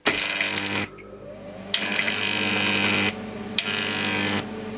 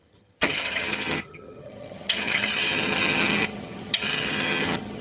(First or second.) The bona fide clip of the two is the first